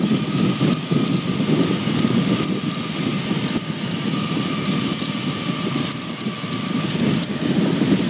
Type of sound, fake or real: real